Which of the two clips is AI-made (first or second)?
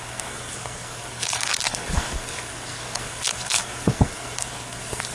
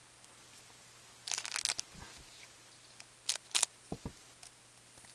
first